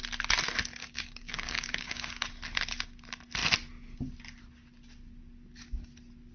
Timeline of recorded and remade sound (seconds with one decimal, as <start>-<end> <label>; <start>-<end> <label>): 0.0-0.8 recorded; 0.8-2.1 remade; 2.1-6.3 recorded